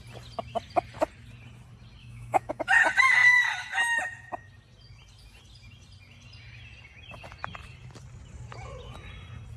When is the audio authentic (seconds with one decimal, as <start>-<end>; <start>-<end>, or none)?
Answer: 0.0-2.0; 2.6-9.6